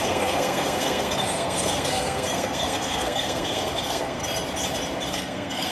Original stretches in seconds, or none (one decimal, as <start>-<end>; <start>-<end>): 4.2-5.1